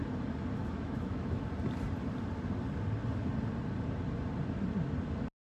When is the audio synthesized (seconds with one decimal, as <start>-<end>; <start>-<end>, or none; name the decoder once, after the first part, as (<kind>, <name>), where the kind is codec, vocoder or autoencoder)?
0.6-1.5 (autoencoder, DAC-VAE)